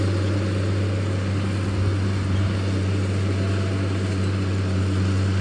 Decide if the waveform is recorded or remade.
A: recorded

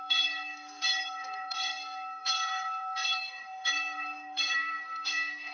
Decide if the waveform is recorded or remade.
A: remade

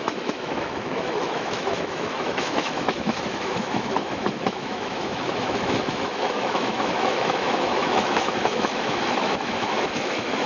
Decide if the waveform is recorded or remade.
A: remade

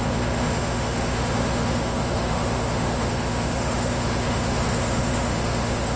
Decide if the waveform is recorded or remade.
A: remade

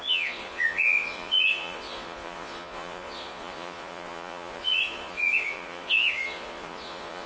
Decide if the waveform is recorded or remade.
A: remade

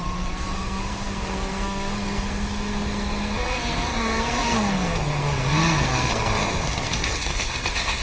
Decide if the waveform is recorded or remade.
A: remade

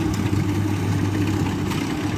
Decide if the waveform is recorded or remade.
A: recorded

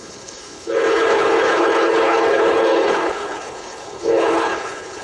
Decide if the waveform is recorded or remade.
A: remade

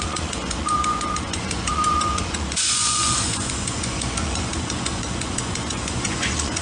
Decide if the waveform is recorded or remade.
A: remade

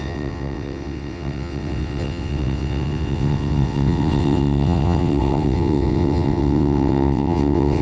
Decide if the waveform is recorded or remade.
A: remade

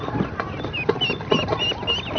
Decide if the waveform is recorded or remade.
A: recorded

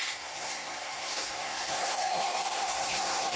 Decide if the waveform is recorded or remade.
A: remade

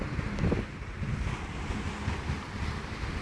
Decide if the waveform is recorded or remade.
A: recorded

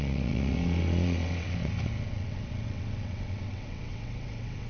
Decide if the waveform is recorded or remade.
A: remade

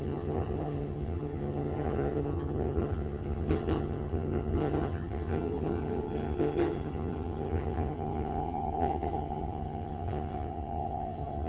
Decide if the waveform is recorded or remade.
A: remade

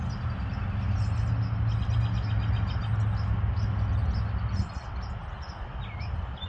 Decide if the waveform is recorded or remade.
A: recorded